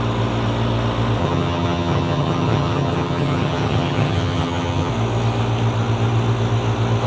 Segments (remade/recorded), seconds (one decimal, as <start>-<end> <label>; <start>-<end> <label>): 0.0-1.2 recorded; 1.2-4.9 remade; 4.9-7.1 recorded